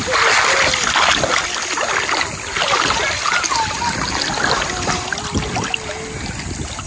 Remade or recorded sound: recorded